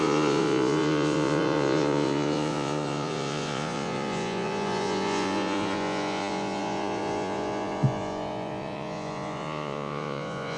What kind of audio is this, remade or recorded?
remade